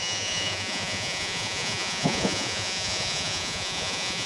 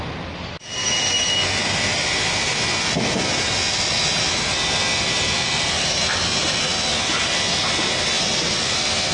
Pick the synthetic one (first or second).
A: first